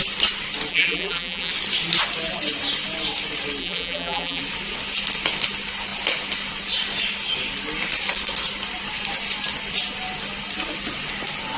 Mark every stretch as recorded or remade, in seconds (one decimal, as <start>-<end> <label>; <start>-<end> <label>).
0.0-0.7 recorded; 0.7-1.5 remade; 1.5-3.6 recorded; 3.6-4.4 remade; 4.4-11.6 recorded